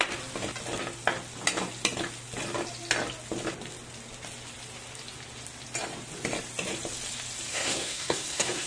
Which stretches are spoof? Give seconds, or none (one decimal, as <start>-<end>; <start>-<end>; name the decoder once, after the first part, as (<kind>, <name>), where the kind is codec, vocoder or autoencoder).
7.5-8.7 (codec, SNAC)